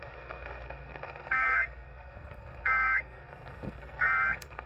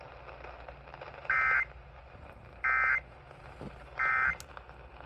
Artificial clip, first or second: first